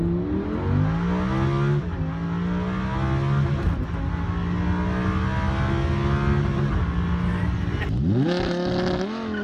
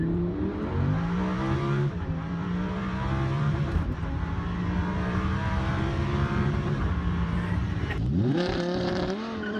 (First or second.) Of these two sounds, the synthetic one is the second